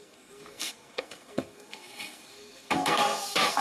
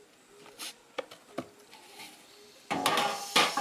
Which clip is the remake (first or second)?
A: first